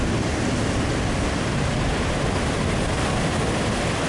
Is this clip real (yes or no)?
yes